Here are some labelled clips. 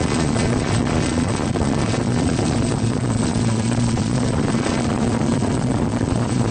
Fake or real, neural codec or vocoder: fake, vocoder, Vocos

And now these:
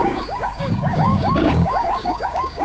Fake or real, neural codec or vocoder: fake, codec, DAC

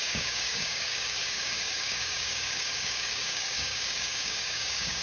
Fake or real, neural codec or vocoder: fake, codec, DAC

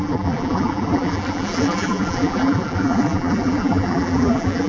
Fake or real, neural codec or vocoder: fake, vocoder, BigVGAN v2